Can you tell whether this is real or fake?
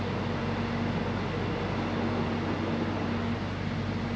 real